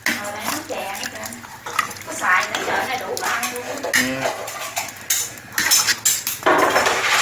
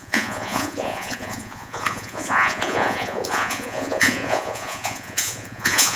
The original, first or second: first